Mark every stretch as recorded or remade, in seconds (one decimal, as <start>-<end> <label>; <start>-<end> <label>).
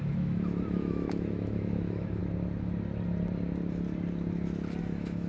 0.0-2.2 remade; 2.2-4.8 recorded; 4.8-5.3 remade